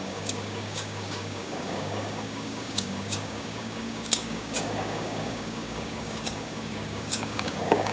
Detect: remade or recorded remade